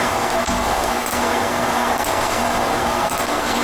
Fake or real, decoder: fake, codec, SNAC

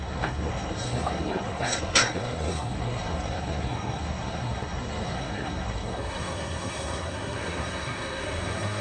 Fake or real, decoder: fake, codec, SNAC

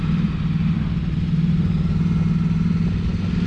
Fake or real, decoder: real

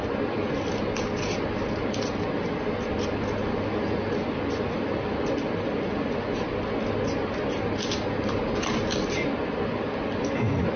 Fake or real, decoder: real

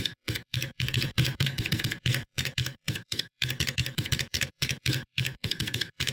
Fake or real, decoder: fake, codec, SNAC